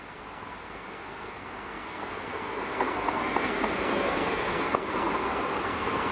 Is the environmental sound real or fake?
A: fake